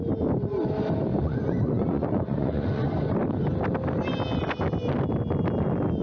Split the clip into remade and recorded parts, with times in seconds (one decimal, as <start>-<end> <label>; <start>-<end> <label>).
0.0-1.1 recorded; 1.1-2.8 remade; 2.8-6.0 recorded